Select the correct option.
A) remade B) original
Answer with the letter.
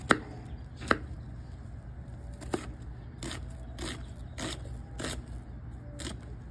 B